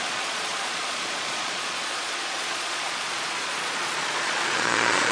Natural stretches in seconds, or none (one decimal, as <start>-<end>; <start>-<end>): none